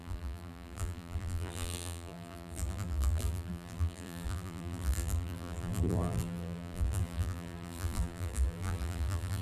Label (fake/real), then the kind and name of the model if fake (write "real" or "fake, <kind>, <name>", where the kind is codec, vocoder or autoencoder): fake, vocoder, BigVGAN v2